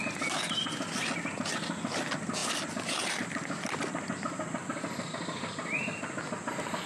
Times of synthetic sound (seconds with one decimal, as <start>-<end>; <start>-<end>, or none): none

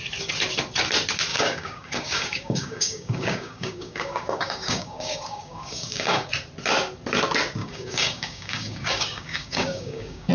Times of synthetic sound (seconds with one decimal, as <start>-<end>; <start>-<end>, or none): 1.3-6.3; 7.6-10.3

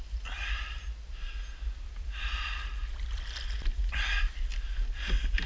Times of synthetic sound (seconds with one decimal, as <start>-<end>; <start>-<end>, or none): none

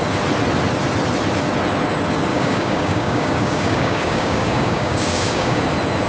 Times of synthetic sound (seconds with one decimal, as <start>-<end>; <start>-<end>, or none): 2.3-5.6